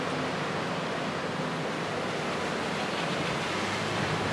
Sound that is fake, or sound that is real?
real